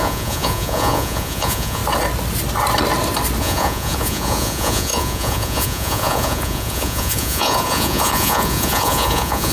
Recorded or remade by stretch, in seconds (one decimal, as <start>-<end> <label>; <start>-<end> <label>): 0.0-1.8 remade; 1.8-3.4 recorded; 3.4-9.5 remade